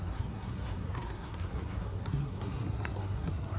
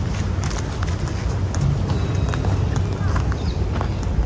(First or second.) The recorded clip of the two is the second